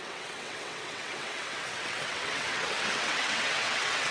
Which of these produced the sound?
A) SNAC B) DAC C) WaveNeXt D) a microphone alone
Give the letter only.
C